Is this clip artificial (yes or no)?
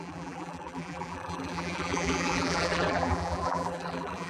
yes